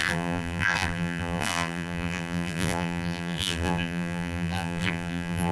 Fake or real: fake